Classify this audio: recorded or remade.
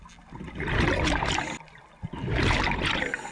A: recorded